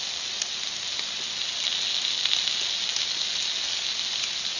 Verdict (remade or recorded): recorded